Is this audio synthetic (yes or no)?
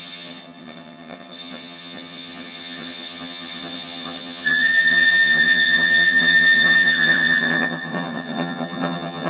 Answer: yes